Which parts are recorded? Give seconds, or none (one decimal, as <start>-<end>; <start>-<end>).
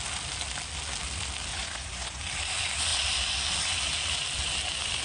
0.0-1.5; 2.2-5.0